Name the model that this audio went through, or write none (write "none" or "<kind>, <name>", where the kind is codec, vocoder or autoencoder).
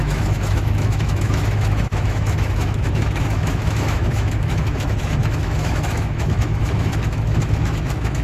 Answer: autoencoder, DAC-VAE